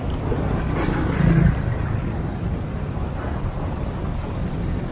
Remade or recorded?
remade